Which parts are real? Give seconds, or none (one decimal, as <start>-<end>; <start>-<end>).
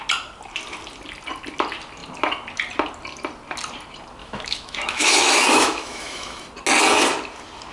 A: 0.0-4.2; 6.4-7.7